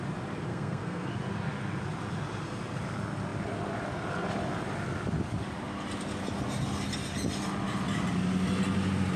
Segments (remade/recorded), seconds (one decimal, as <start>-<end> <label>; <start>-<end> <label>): 0.0-0.5 recorded; 0.5-1.1 remade; 1.1-9.2 recorded